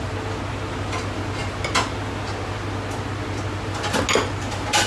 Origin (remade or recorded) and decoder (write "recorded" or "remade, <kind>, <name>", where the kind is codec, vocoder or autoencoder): recorded